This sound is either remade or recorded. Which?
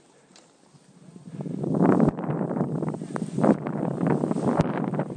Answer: remade